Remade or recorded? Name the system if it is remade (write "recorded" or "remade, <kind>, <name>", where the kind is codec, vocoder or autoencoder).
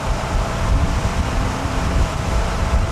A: remade, vocoder, BigVGAN v2